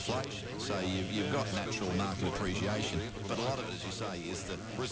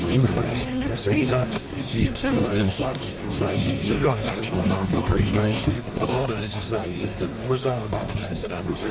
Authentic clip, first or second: first